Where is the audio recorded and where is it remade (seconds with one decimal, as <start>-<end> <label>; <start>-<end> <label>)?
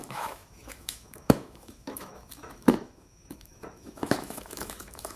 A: 0.0-5.2 remade